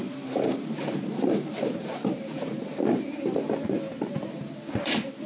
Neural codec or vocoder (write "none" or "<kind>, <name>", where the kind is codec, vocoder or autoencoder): vocoder, BigVGAN v2